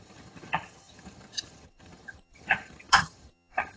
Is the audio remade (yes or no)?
yes